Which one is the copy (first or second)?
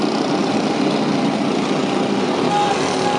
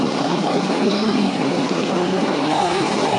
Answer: second